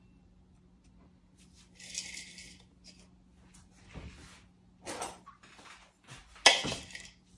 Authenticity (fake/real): real